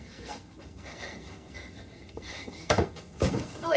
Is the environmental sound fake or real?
fake